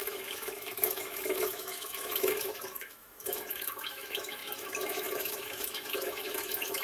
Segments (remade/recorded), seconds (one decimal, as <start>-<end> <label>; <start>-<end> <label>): 0.0-6.8 remade